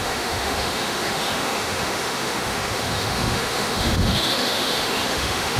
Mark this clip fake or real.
fake